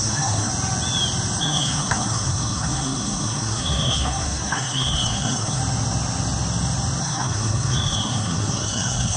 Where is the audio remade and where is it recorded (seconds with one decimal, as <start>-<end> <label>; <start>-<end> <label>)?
0.0-0.5 remade; 0.5-1.4 recorded; 1.4-5.6 remade; 5.6-7.0 recorded; 7.0-9.2 remade